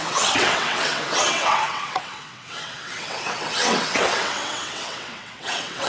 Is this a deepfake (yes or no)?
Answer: yes